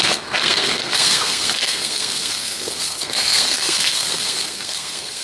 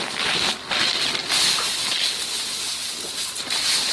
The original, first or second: second